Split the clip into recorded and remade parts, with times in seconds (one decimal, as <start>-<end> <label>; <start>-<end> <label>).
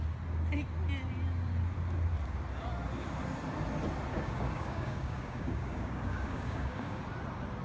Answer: 0.0-4.1 recorded; 4.1-7.0 remade; 7.0-7.6 recorded